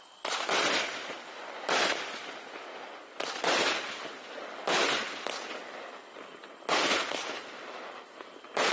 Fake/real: real